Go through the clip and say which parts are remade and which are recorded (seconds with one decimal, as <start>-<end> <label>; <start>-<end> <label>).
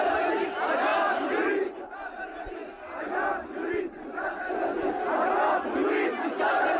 0.0-2.6 remade; 2.6-3.8 recorded; 3.8-6.8 remade